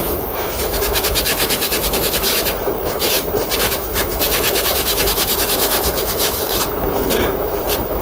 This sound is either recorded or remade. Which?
remade